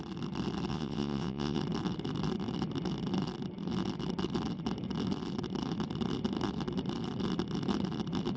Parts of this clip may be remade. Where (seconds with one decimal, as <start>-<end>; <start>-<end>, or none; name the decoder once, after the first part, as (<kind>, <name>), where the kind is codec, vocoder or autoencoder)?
0.7-1.6 (vocoder, WaveNeXt)